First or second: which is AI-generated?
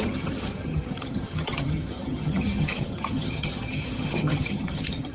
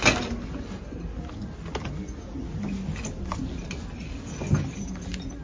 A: first